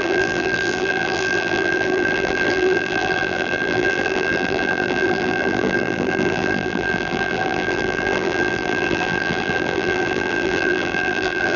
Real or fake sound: fake